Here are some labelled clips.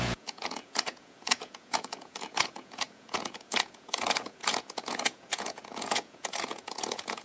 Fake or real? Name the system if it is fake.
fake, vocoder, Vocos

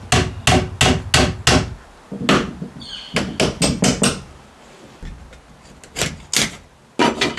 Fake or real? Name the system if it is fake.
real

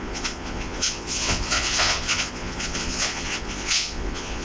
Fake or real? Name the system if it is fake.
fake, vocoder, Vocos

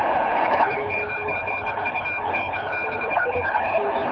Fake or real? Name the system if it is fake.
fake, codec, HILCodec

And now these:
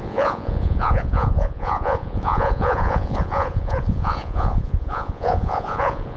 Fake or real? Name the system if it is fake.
fake, vocoder, Vocos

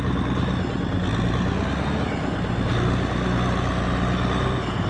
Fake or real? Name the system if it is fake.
real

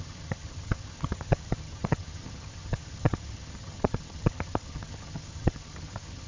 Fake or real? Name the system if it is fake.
fake, vocoder, HiFi-GAN